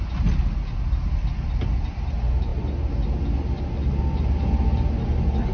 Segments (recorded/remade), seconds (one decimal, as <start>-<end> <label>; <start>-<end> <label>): 0.0-5.5 recorded